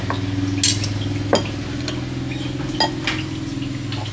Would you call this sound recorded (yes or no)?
yes